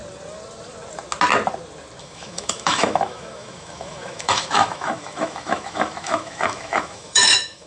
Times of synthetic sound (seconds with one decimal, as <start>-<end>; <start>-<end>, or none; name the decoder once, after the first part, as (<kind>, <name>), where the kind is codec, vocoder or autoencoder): 2.0-7.7 (autoencoder, DAC-VAE)